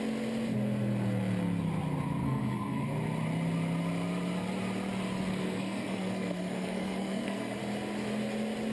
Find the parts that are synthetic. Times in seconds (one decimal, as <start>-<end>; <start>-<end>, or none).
2.2-2.9; 5.3-7.6